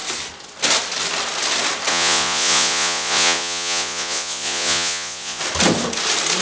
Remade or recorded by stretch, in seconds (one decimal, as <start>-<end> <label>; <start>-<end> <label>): 0.0-1.9 recorded; 1.9-5.4 remade; 5.4-6.4 recorded